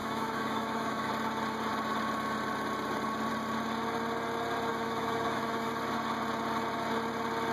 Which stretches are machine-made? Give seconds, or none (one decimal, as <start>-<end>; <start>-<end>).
0.0-1.1; 4.7-5.7